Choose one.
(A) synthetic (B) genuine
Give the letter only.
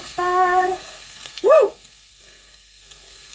A